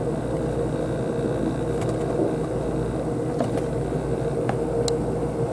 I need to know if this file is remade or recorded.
recorded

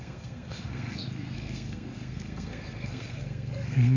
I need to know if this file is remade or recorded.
remade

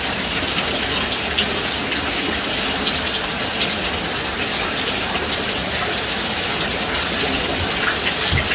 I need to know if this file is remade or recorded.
recorded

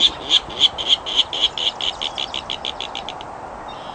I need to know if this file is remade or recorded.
recorded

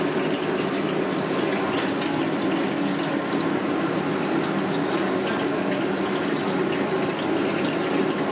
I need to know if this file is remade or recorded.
recorded